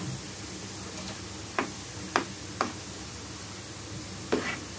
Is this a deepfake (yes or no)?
no